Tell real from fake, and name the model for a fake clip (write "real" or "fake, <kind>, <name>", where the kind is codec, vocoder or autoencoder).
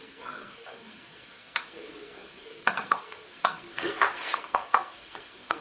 fake, codec, SNAC